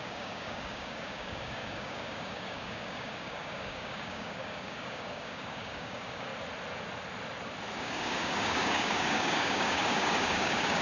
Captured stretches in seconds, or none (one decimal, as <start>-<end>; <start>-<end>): 6.3-7.8